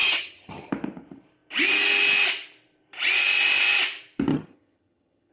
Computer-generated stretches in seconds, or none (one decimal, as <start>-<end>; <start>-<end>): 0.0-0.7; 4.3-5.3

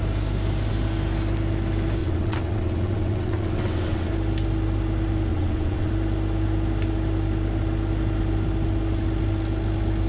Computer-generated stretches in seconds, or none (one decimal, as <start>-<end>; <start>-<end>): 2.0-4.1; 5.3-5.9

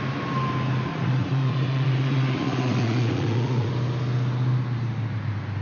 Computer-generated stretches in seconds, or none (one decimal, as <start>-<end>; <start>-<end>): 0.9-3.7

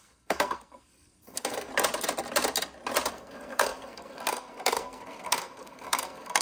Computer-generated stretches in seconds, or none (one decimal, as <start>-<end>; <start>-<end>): 0.0-1.7; 3.1-6.4

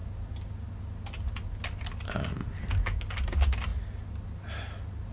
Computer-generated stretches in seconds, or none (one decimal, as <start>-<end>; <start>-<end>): 3.1-3.7

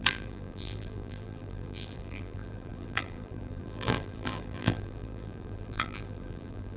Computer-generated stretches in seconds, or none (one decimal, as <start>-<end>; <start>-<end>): 0.0-6.8

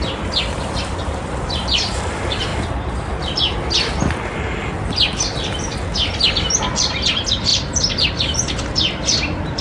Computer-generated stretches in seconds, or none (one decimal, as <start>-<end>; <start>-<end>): 0.0-2.5; 6.7-9.6